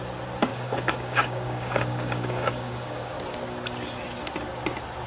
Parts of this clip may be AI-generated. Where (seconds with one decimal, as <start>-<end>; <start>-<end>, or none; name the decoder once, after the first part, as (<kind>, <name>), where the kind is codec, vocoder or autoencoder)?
0.5-3.2 (codec, DAC)